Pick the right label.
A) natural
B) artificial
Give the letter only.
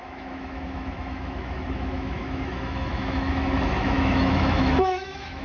B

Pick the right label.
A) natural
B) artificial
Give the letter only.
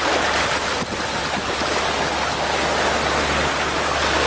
A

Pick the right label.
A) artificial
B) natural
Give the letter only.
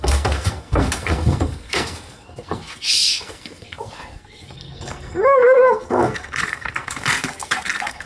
A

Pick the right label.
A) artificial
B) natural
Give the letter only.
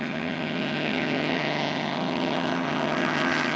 A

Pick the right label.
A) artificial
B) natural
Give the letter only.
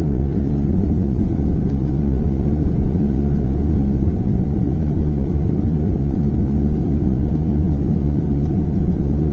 A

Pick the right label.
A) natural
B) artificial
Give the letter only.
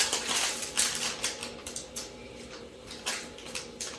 A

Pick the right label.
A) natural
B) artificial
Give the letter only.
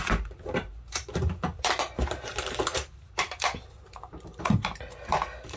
B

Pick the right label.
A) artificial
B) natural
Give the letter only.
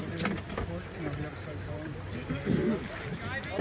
B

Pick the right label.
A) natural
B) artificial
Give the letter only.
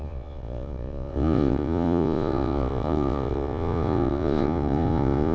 B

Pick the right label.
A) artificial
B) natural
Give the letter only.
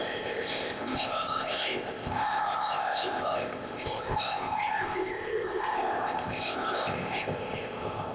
A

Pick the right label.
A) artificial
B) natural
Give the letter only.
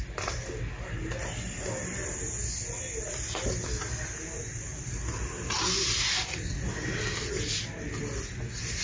B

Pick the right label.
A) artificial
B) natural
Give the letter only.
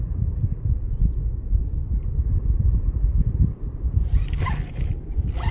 B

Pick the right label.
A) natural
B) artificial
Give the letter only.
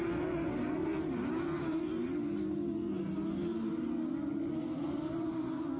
A